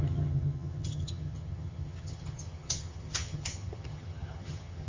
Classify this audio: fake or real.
fake